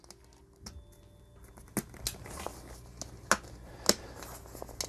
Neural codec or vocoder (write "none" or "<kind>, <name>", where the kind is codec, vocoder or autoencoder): none